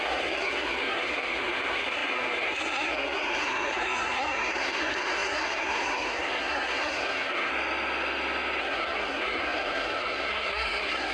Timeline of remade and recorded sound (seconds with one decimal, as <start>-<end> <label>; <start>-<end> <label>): 0.0-7.5 remade; 7.5-8.6 recorded; 8.6-11.1 remade